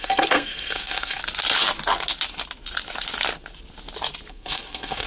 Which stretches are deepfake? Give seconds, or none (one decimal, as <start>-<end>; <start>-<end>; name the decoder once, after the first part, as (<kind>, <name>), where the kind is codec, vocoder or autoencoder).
0.0-1.2 (codec, SNAC); 4.3-5.1

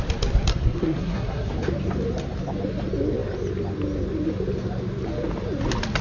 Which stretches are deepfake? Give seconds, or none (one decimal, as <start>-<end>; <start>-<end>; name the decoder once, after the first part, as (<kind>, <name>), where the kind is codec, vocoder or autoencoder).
0.5-1.5 (codec, SNAC)

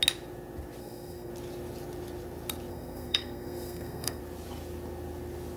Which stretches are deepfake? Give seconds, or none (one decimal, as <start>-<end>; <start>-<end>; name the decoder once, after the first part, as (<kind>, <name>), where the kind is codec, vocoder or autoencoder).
0.8-1.3 (codec, SNAC); 2.7-4.2

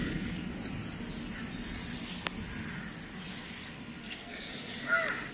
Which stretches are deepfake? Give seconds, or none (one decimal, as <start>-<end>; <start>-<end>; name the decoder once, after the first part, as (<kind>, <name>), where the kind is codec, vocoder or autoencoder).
0.0-0.5 (codec, SNAC); 3.7-4.5

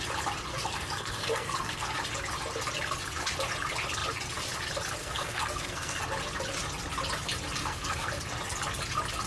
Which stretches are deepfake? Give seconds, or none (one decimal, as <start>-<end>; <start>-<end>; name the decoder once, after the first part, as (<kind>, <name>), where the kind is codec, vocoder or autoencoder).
0.5-1.9 (codec, SNAC); 5.0-6.0; 7.6-8.1

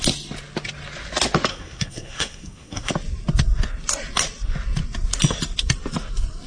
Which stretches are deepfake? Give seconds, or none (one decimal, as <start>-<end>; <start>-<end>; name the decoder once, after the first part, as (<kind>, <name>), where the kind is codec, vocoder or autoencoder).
1.5-2.9 (codec, SNAC)